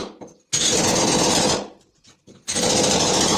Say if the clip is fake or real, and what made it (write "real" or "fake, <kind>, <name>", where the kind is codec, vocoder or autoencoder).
real